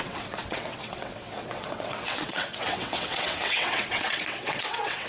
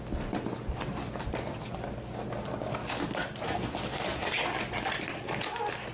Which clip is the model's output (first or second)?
first